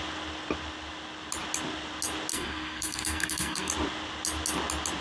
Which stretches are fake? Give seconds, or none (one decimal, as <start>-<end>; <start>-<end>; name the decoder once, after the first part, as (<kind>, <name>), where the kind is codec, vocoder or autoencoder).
2.3-3.7 (codec, SNAC)